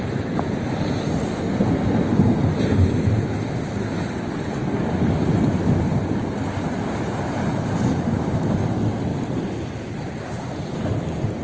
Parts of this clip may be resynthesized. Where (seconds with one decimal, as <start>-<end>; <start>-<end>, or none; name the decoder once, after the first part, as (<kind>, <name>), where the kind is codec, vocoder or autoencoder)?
1.3-2.5 (codec, SNAC)

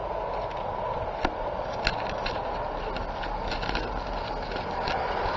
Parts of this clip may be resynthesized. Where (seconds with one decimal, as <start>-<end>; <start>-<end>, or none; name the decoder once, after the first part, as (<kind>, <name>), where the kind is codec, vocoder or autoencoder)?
none

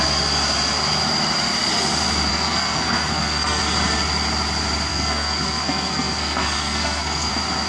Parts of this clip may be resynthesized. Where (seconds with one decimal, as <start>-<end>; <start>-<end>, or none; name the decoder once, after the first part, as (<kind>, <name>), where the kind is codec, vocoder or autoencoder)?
2.3-3.6 (codec, SNAC); 4.9-7.3

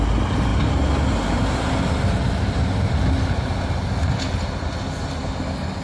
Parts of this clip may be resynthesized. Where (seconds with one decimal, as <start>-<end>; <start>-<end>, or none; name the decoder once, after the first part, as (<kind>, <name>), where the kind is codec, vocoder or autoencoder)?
none